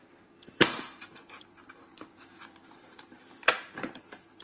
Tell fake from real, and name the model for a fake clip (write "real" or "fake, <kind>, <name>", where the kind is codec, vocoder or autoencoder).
fake, vocoder, BigVGAN v2